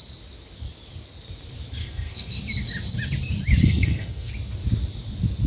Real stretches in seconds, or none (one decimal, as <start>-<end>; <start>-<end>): 0.0-1.8; 2.3-3.6; 4.3-5.5